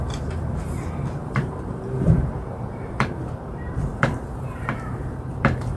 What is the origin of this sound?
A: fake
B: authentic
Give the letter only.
A